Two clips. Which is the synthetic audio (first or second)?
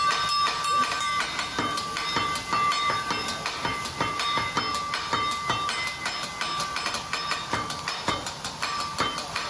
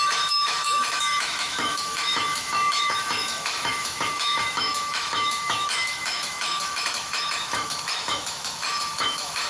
second